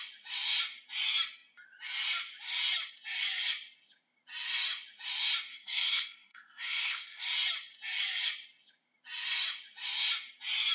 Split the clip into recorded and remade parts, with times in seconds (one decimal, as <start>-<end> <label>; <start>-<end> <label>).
0.0-5.5 recorded; 5.5-7.2 remade; 7.2-10.7 recorded